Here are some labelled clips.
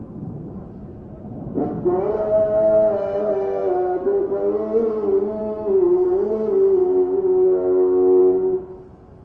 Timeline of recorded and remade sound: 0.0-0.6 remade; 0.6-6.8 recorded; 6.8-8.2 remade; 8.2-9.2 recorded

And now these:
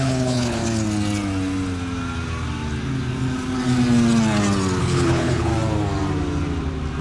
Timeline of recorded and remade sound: 0.0-0.6 remade; 0.6-4.8 recorded; 4.8-5.5 remade; 5.5-7.0 recorded

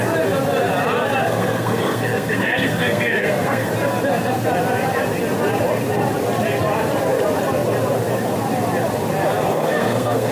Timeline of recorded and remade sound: 0.0-1.2 recorded; 1.2-3.7 remade; 3.7-9.5 recorded; 9.5-10.3 remade